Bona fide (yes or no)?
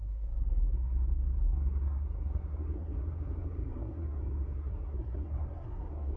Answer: no